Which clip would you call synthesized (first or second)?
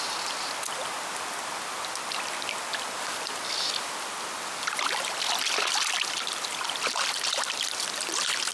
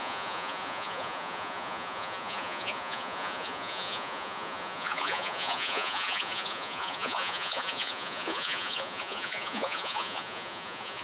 second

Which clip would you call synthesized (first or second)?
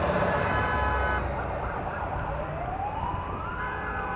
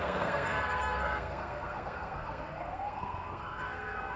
second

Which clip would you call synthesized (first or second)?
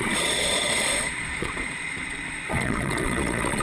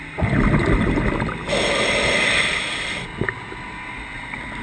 first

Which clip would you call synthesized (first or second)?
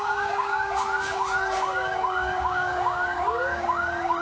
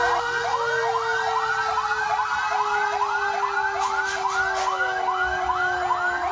first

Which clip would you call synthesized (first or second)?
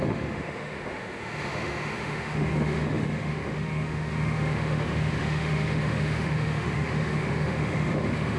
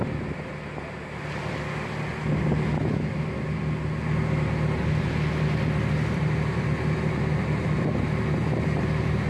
first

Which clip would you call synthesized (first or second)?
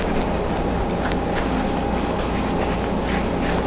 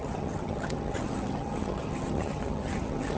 second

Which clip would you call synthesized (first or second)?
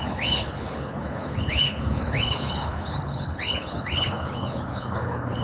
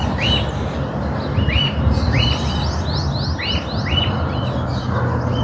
first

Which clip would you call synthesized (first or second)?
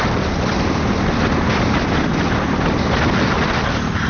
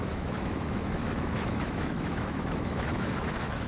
second